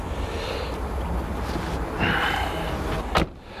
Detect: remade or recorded recorded